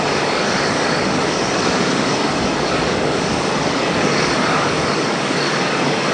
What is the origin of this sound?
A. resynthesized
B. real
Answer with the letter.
A